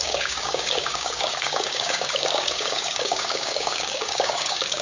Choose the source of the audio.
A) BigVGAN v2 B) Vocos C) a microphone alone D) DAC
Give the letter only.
D